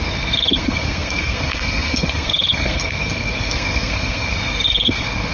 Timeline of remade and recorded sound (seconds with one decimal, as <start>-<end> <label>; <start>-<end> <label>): 0.0-5.3 remade